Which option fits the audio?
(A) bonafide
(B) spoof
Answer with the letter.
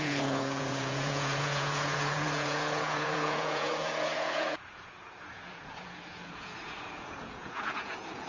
B